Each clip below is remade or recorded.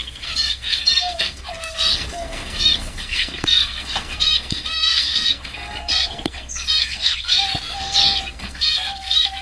remade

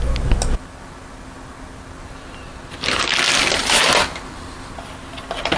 recorded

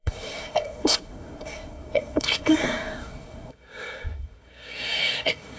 remade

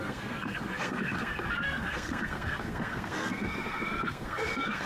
remade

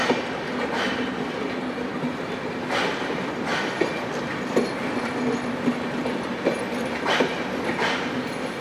recorded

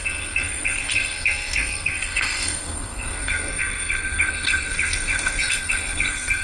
remade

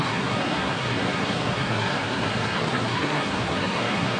remade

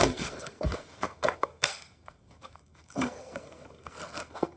remade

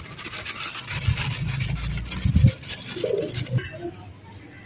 recorded